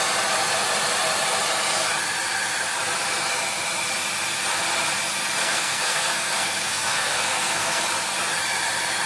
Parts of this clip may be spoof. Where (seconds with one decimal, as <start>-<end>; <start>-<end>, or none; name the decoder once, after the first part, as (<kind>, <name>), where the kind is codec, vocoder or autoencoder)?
5.4-7.8 (codec, SNAC)